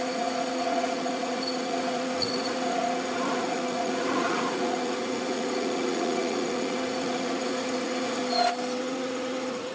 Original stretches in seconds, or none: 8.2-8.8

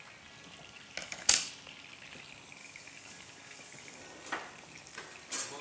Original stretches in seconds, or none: 0.0-1.0; 1.5-2.6; 4.0-5.6

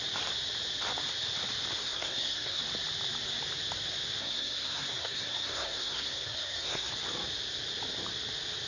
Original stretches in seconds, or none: 0.0-1.8; 2.6-4.2; 6.9-8.7